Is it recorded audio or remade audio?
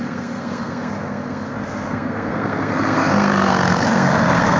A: remade